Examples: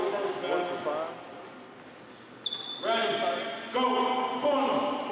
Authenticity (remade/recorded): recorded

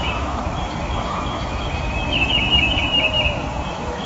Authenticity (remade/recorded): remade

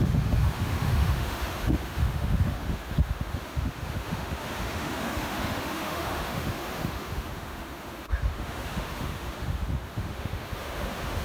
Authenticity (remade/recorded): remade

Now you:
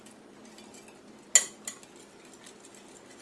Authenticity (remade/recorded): recorded